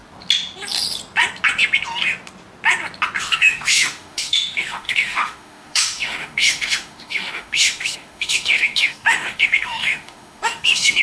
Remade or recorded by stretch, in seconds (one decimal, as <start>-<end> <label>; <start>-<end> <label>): 0.0-3.2 recorded; 3.2-11.0 remade